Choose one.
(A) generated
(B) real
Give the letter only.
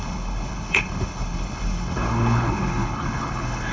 A